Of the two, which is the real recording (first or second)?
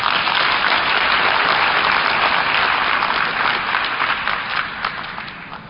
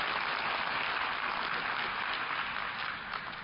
second